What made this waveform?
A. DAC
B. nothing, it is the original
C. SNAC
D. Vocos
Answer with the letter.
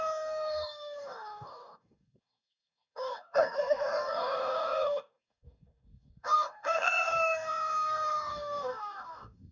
A